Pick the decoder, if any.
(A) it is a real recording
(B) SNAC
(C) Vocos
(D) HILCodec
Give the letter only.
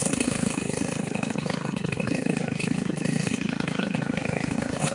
B